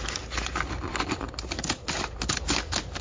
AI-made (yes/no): no